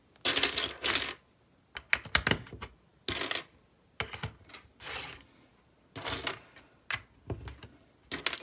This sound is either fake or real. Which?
real